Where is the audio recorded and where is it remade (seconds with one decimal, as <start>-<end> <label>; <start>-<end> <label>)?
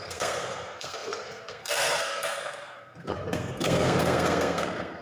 0.0-5.0 remade